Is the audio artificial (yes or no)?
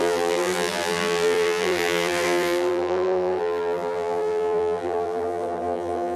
yes